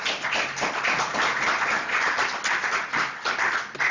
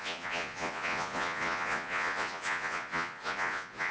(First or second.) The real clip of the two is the first